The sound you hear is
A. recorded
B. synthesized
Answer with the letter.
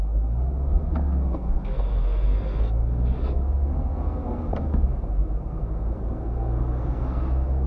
B